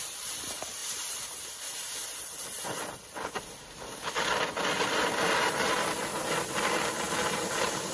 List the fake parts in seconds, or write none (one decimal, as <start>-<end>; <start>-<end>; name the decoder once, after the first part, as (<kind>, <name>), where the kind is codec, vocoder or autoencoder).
0.0-6.0 (vocoder, BigVGAN v2); 6.6-7.9

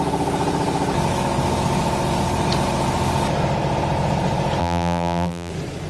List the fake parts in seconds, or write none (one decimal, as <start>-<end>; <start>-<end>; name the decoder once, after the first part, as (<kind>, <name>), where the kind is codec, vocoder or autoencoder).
4.6-5.5 (vocoder, BigVGAN v2)

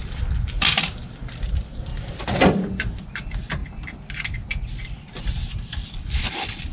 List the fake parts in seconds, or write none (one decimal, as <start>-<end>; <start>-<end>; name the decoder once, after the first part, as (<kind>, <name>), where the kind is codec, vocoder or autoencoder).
0.0-1.9 (vocoder, BigVGAN v2); 2.5-3.6; 5.6-6.7

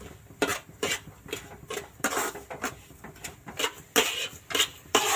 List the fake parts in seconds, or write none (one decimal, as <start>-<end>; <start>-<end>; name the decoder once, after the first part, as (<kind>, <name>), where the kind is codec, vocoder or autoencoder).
none

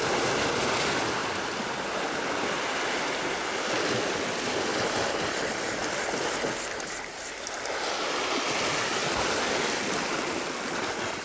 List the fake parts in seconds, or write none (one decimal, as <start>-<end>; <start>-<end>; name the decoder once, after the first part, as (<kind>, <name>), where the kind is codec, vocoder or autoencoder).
none